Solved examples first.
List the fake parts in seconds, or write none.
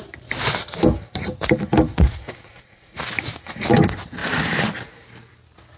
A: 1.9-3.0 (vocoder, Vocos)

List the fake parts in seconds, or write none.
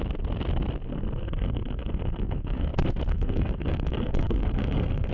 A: 0.9-2.7 (codec, SNAC); 3.1-5.1